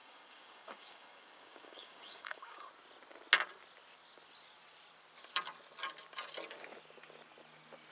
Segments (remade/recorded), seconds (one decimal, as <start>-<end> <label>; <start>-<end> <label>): 0.0-2.7 remade; 2.7-7.9 recorded

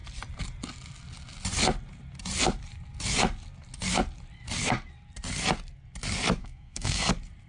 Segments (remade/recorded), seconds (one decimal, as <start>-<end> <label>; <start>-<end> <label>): 0.0-6.4 recorded; 6.4-7.1 remade; 7.1-7.5 recorded